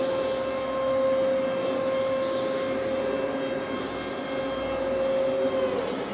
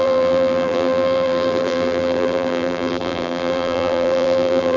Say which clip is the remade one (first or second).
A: second